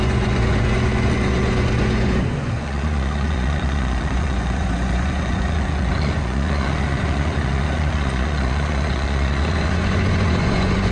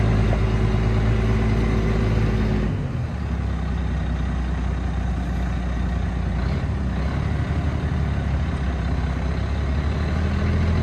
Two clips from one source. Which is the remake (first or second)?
first